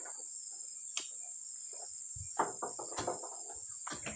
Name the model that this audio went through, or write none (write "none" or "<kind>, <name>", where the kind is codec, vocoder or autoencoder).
none